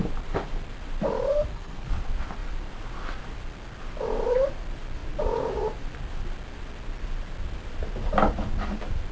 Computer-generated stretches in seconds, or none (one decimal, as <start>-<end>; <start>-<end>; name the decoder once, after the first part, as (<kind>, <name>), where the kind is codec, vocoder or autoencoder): 1.5-2.0 (codec, SNAC)